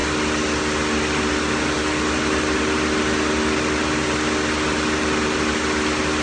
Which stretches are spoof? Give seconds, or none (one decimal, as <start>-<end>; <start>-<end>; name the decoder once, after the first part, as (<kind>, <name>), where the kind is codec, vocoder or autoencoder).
none